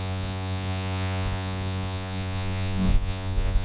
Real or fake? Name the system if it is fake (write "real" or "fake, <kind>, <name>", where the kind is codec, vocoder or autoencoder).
fake, vocoder, Vocos